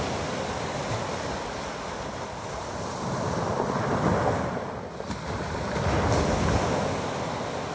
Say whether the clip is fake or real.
real